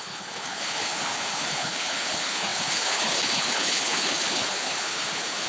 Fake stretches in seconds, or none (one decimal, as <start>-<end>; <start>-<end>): 0.0-5.5